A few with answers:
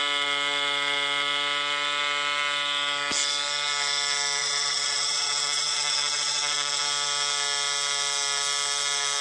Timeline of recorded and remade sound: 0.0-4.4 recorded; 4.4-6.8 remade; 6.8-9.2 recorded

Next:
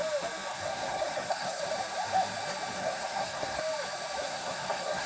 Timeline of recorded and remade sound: 0.0-0.5 recorded; 0.5-1.6 remade; 1.6-2.8 recorded; 2.8-3.6 remade; 3.6-4.2 recorded; 4.2-5.1 remade

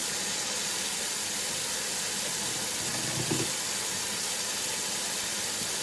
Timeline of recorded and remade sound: 0.0-0.7 remade; 0.7-5.8 recorded

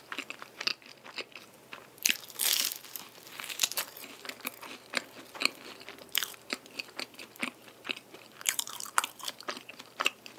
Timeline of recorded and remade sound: 0.0-0.7 remade; 0.7-1.4 recorded; 1.4-4.5 remade; 4.5-5.2 recorded; 5.2-10.4 remade

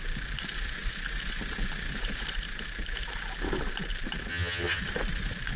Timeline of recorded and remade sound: 0.0-4.3 recorded; 4.3-4.8 remade; 4.8-5.6 recorded